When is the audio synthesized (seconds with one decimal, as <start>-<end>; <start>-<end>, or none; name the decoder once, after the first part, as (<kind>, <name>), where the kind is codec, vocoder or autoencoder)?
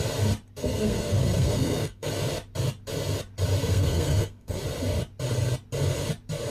0.6-2.1 (codec, SNAC); 3.6-4.6